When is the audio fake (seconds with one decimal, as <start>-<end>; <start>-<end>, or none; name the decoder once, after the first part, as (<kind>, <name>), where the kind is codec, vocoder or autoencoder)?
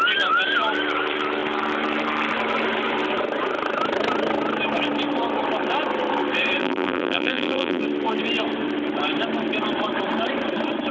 6.6-7.8 (vocoder, BigVGAN v2)